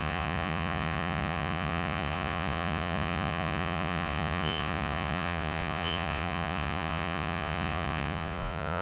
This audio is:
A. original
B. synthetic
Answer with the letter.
B